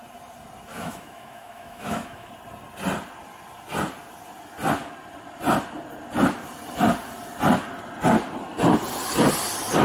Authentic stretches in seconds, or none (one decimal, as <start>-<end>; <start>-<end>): 0.0-0.7; 2.3-9.8